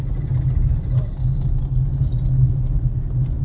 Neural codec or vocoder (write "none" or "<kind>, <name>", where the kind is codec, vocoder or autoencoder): none